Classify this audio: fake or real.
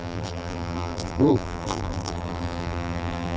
fake